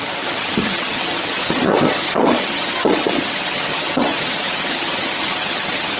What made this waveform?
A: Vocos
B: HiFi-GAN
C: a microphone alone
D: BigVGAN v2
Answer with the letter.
B